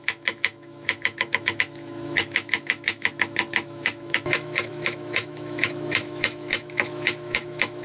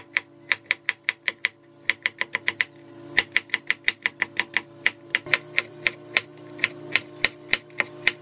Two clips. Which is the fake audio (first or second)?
first